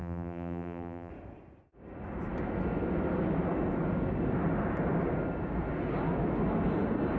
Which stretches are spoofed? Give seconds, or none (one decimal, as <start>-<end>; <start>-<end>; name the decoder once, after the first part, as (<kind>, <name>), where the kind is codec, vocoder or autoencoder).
0.0-1.1 (vocoder, BigVGAN v2)